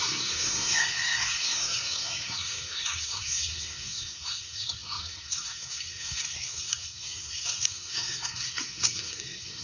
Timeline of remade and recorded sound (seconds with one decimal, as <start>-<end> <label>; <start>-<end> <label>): 0.0-9.6 remade